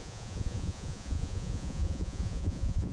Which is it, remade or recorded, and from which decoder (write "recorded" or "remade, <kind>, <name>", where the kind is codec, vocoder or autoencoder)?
remade, vocoder, Vocos